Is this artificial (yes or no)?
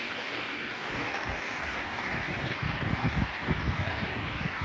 yes